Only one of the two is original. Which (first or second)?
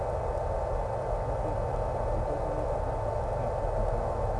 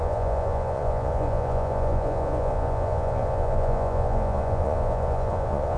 first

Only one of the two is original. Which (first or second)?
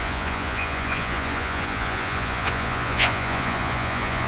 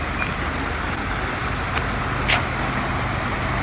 second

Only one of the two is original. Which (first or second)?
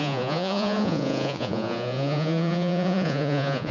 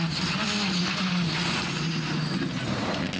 second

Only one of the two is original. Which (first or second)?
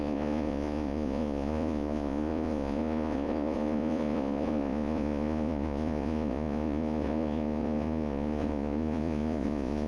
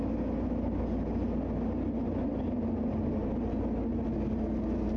second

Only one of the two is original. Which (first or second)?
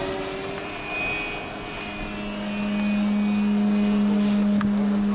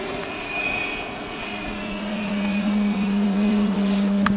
first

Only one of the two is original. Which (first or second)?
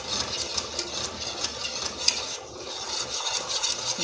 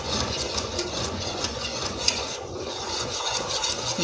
first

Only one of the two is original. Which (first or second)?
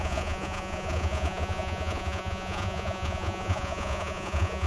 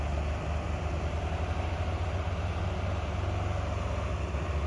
second